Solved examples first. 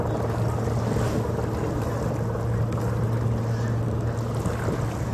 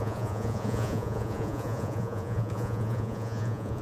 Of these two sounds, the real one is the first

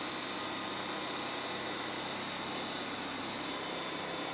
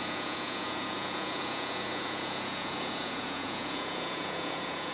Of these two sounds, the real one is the first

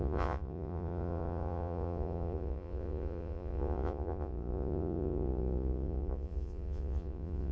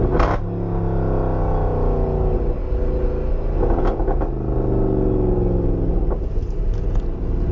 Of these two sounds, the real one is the second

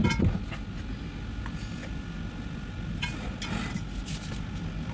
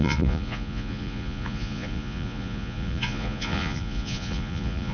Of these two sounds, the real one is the first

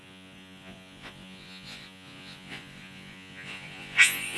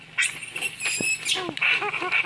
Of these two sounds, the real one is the second